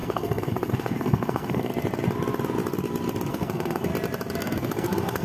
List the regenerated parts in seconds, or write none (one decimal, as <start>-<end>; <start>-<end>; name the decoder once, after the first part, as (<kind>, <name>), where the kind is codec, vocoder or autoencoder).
0.0-1.7 (codec, SNAC); 3.3-3.9; 4.4-5.2